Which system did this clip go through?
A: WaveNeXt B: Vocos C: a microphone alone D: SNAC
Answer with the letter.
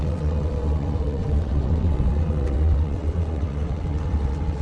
A